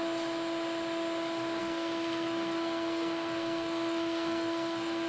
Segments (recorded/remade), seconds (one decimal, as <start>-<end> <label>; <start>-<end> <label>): 0.0-1.6 recorded; 1.6-5.1 remade